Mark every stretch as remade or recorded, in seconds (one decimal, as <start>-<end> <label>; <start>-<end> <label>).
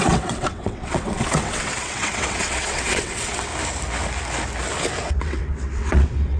0.0-3.5 remade; 3.5-5.2 recorded; 5.2-6.4 remade